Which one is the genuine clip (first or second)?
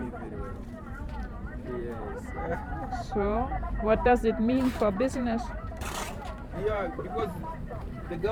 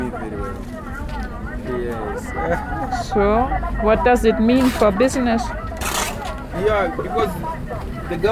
second